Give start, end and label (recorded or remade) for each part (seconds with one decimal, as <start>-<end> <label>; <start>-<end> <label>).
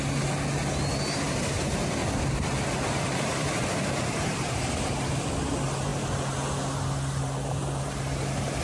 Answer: 0.0-2.0 recorded; 2.0-3.9 remade; 3.9-8.6 recorded